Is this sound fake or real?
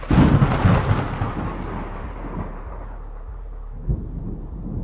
real